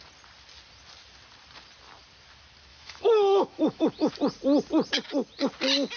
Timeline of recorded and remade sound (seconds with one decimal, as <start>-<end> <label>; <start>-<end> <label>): 0.0-2.7 recorded; 2.7-4.1 remade; 4.1-6.0 recorded